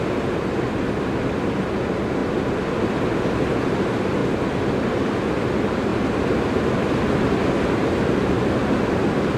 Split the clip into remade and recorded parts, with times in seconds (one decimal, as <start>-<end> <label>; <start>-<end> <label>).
0.0-9.4 recorded

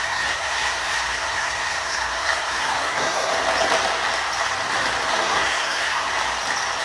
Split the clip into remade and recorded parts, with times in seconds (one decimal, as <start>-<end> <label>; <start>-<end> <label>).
0.0-3.3 remade; 3.3-5.1 recorded; 5.1-6.1 remade; 6.1-6.8 recorded

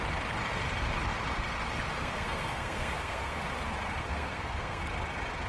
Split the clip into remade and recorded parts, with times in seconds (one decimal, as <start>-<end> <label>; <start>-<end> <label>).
0.0-2.0 recorded; 2.0-3.4 remade; 3.4-4.0 recorded; 4.0-4.8 remade; 4.8-5.5 recorded

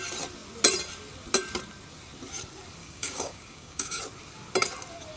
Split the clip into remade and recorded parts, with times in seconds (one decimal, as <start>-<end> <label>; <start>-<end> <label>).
0.0-2.8 recorded; 2.8-4.0 remade; 4.0-5.2 recorded

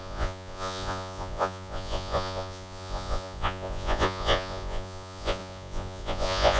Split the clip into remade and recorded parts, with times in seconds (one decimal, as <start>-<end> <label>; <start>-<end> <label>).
0.0-6.6 remade

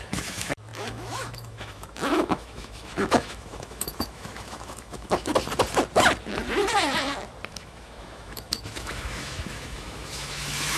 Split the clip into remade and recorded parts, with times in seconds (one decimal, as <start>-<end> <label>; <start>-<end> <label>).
0.0-5.3 remade; 5.3-7.5 recorded; 7.5-10.8 remade